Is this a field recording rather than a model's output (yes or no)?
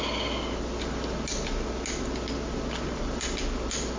yes